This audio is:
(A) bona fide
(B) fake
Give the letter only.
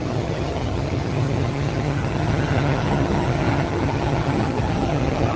B